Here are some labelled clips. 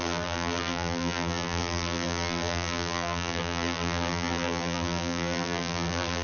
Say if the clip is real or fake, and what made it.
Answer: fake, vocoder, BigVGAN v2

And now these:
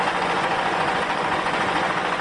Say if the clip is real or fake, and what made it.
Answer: fake, vocoder, Vocos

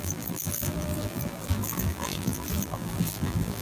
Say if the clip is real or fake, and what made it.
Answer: fake, vocoder, BigVGAN v2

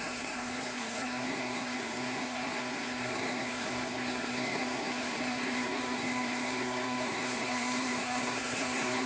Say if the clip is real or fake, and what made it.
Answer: fake, codec, SNAC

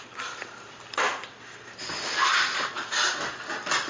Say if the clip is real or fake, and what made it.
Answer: real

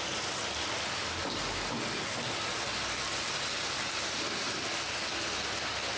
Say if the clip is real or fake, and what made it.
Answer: real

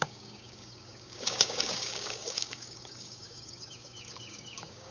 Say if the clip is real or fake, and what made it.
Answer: fake, codec, DAC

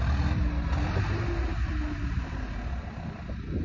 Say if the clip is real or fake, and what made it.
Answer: real